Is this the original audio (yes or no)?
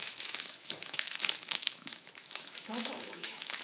no